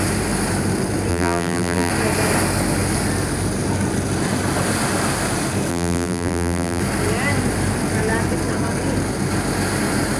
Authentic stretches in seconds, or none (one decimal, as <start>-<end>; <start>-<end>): 0.0-1.1; 1.9-5.7; 6.8-10.2